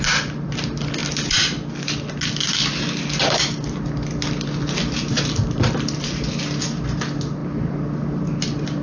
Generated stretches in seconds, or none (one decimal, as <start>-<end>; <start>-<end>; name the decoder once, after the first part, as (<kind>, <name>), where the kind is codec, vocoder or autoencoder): none